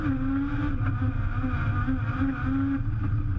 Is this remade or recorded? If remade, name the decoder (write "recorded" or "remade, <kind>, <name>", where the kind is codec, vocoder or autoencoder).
recorded